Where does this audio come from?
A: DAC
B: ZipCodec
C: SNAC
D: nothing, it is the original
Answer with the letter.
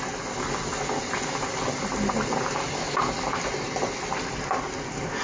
D